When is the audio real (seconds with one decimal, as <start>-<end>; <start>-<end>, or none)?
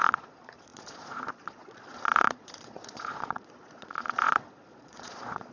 none